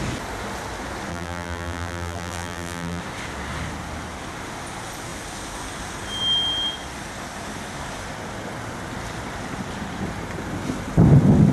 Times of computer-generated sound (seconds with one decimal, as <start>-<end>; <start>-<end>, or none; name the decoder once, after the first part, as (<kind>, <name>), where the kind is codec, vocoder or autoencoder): 1.1-3.0 (vocoder, BigVGAN v2)